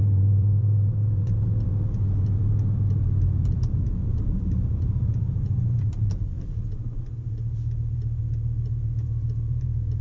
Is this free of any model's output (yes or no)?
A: no